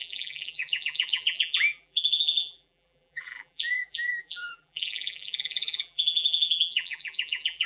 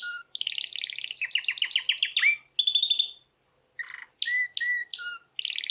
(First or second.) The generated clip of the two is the first